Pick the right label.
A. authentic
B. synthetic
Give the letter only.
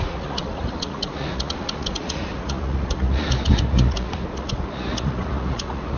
B